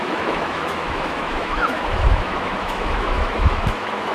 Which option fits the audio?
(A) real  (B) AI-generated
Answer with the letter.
B